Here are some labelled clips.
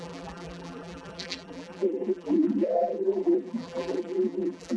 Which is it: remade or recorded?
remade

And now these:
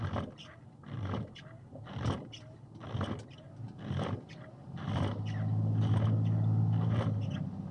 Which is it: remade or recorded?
recorded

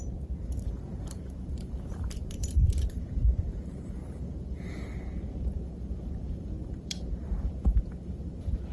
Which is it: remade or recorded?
remade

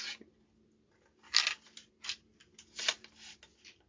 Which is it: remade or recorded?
recorded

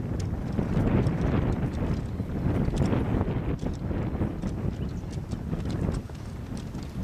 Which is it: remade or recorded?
recorded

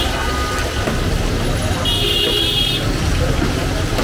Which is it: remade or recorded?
recorded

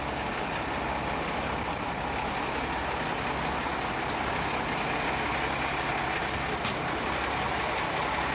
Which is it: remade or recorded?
recorded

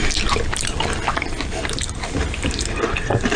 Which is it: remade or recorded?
recorded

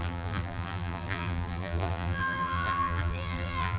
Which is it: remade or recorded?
remade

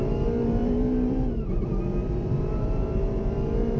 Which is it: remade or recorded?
remade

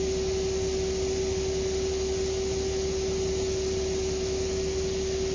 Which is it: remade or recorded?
recorded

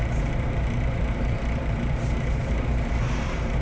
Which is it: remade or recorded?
remade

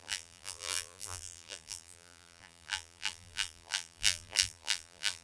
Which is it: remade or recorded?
remade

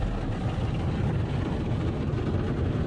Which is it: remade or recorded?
recorded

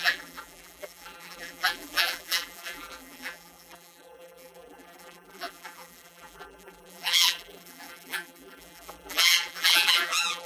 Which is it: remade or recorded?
remade